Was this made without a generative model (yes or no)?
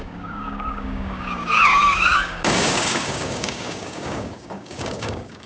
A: no